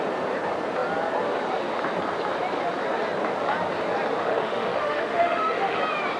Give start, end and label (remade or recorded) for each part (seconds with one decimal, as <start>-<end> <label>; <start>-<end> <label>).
0.0-4.2 recorded; 4.2-5.8 remade; 5.8-6.2 recorded